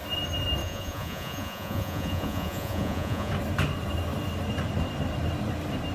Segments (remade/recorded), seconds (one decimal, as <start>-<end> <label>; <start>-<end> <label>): 0.0-0.6 recorded; 0.6-3.3 remade; 3.3-5.9 recorded